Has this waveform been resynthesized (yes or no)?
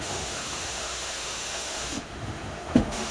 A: yes